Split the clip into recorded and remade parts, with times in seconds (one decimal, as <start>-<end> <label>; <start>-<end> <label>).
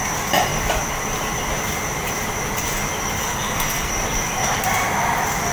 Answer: 0.0-3.2 recorded; 3.2-3.9 remade; 3.9-5.5 recorded